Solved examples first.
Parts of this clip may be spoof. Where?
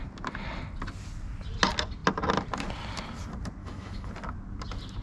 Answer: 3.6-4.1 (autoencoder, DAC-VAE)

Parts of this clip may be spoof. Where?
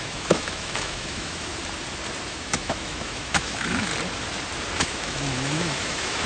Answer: 0.0-1.5 (autoencoder, DAC-VAE); 2.3-3.9; 4.8-6.3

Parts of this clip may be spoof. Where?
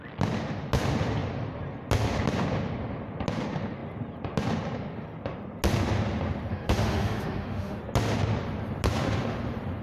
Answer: 6.5-7.8 (autoencoder, DAC-VAE)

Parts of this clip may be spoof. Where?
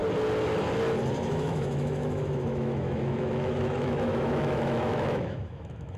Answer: 1.3-6.0 (autoencoder, DAC-VAE)